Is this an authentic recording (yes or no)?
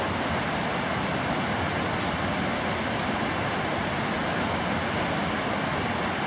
yes